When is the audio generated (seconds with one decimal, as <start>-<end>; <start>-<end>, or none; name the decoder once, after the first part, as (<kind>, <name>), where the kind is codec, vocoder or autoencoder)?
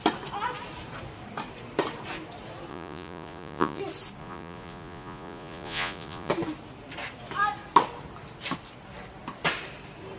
2.7-3.8 (vocoder, Vocos); 4.2-6.3